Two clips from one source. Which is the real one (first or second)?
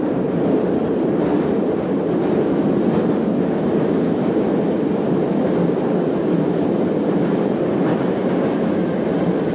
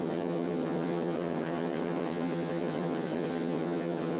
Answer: first